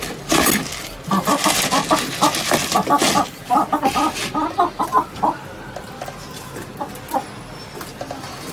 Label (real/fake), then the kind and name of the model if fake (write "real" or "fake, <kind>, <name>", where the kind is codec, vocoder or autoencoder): real